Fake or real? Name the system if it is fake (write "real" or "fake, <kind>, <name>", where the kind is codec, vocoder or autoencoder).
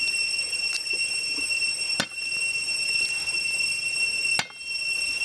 real